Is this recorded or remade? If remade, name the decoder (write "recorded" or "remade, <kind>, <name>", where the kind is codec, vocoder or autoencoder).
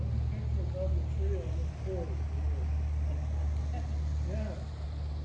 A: recorded